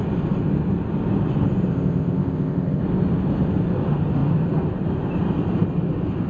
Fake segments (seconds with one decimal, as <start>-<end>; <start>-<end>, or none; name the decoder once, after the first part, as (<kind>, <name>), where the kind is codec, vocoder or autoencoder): 1.7-2.8 (codec, ZipCodec)